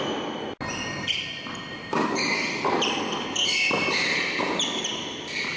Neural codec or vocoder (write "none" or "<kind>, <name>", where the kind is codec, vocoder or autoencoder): none